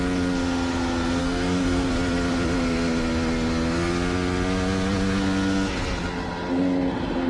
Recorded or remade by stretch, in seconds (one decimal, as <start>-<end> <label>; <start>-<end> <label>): 0.0-1.2 recorded; 1.2-1.9 remade; 1.9-7.3 recorded